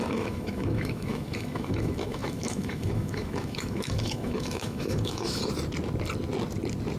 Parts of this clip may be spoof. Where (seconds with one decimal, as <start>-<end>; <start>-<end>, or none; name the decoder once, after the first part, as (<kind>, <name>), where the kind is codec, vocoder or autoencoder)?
0.0-5.4 (autoencoder, DAC-VAE)